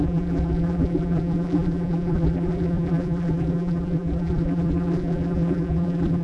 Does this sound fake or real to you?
fake